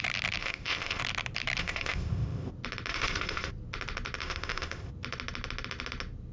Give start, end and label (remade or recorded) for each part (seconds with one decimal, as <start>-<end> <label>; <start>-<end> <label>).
0.0-0.4 recorded; 0.4-1.0 remade; 1.0-1.6 recorded; 1.6-2.5 remade; 2.5-2.9 recorded; 2.9-3.5 remade; 3.5-4.2 recorded; 4.2-4.9 remade; 4.9-6.3 recorded